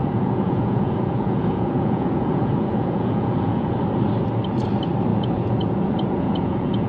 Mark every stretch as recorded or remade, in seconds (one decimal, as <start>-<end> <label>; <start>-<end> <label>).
0.0-3.7 remade; 3.7-5.1 recorded; 5.1-6.9 remade